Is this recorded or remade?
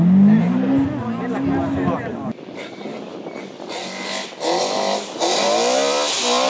recorded